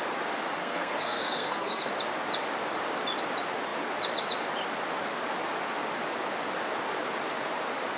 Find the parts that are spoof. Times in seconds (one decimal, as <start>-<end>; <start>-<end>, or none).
0.6-1.9